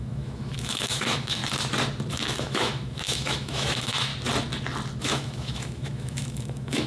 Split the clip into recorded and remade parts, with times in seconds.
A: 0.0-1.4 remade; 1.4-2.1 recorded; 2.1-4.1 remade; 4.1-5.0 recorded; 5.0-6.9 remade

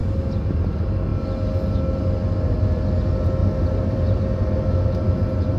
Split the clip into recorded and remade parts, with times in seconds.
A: 0.0-3.4 recorded; 3.4-4.2 remade; 4.2-5.6 recorded

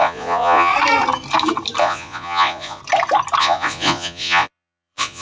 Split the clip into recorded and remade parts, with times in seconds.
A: 0.0-0.7 remade; 0.7-1.8 recorded; 1.8-2.8 remade; 2.8-3.4 recorded; 3.4-5.2 remade

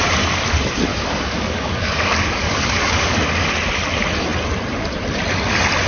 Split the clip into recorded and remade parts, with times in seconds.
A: 0.0-0.9 recorded; 0.9-3.5 remade; 3.5-5.9 recorded